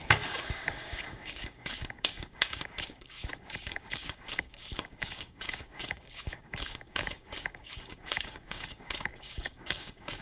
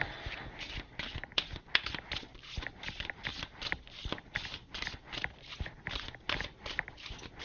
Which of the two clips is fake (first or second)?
first